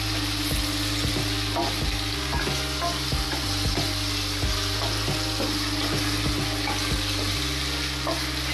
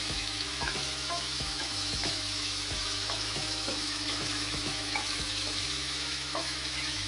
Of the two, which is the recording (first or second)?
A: first